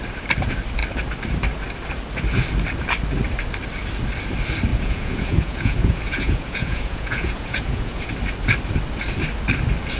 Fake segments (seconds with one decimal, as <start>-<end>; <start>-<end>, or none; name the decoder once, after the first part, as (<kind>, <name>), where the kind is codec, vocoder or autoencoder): 4.7-8.1 (vocoder, Vocos)